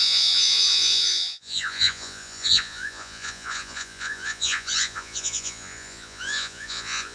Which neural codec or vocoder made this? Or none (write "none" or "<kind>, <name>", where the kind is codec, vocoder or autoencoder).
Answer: vocoder, Vocos